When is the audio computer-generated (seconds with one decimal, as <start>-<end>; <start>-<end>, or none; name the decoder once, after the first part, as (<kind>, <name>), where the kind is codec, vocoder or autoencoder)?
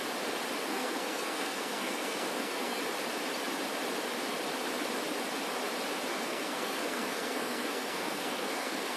0.6-2.8 (codec, SNAC); 6.1-9.0